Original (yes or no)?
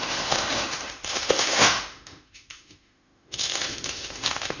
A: no